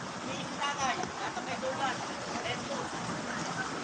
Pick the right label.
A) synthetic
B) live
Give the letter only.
B